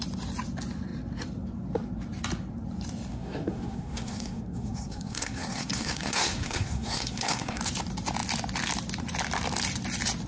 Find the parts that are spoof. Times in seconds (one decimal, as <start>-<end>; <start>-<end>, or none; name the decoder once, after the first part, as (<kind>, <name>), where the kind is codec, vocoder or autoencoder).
3.1-7.6 (codec, SNAC)